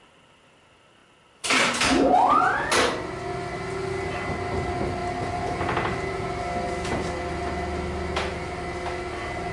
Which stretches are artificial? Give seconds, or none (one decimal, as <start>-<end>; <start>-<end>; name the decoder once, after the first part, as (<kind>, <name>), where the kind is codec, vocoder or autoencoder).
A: none